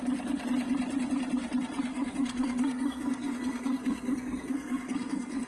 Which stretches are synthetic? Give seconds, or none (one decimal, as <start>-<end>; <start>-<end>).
1.9-5.5